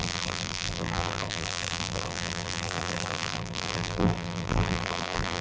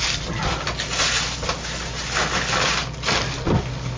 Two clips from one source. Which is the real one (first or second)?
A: second